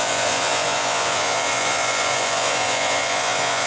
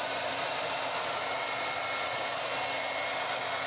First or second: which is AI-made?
first